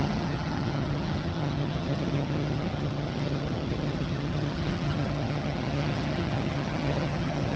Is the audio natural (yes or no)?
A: no